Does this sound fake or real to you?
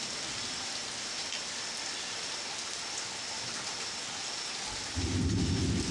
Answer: real